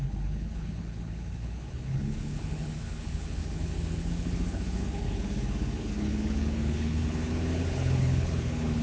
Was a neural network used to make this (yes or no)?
yes